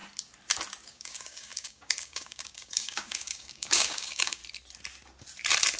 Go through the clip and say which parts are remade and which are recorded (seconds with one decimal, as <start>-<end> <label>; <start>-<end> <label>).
0.0-0.9 recorded; 0.9-4.4 remade; 4.4-5.8 recorded